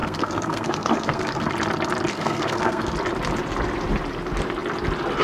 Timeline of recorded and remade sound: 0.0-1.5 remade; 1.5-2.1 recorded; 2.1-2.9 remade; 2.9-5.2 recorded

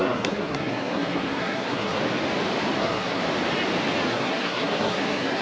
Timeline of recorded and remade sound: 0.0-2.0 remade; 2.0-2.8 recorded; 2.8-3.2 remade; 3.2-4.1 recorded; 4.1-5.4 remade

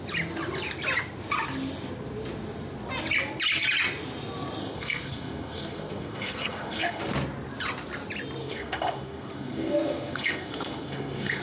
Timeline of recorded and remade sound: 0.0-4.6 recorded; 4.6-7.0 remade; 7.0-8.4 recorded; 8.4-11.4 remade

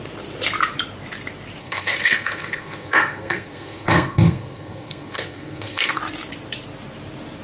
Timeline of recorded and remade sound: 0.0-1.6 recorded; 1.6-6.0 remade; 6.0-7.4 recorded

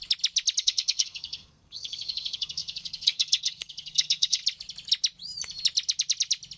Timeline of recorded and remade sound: 0.0-0.6 recorded; 0.6-4.4 remade; 4.4-6.6 recorded

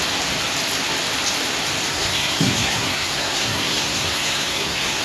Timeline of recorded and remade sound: 0.0-1.9 recorded; 1.9-5.0 remade